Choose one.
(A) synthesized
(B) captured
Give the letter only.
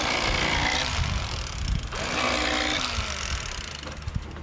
B